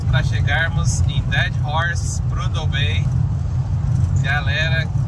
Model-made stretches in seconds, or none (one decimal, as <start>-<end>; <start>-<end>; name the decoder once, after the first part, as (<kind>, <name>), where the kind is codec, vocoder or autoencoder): 0.0-0.7 (vocoder, BigVGAN v2)